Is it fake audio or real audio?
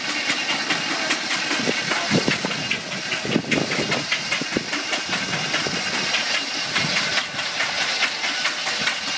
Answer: real